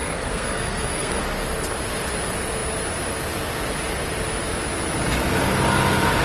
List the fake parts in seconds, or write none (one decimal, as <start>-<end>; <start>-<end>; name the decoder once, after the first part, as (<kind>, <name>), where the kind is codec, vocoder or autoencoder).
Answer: 0.0-1.2 (codec, SNAC)